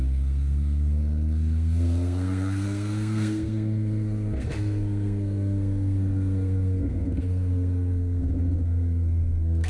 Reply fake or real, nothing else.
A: fake